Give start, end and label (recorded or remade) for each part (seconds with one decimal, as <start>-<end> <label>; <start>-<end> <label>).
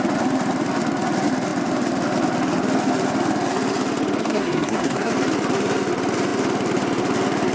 0.0-4.2 recorded; 4.2-5.1 remade; 5.1-7.5 recorded